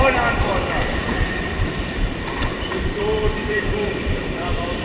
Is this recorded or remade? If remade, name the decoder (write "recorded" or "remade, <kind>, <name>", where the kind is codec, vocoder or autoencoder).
remade, vocoder, BigVGAN v2